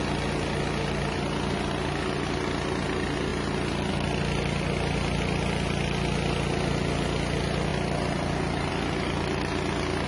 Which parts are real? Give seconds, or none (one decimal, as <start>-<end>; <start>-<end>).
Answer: 0.0-10.1